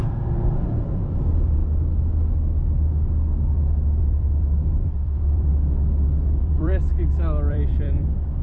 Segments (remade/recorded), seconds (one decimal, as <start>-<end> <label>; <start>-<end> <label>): 0.0-1.6 remade; 1.6-4.0 recorded; 4.0-5.5 remade; 5.5-6.4 recorded; 6.4-6.9 remade; 6.9-7.5 recorded; 7.5-8.4 remade